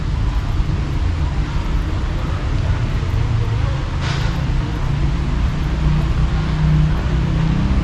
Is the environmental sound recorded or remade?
recorded